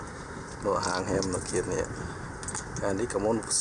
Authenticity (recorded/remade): recorded